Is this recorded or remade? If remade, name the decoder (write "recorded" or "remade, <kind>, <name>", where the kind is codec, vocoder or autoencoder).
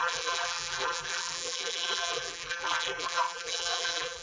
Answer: remade, vocoder, BigVGAN v2